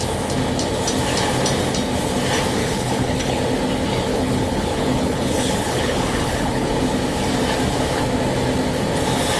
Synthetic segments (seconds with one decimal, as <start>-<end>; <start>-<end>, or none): 2.6-3.4; 4.1-6.7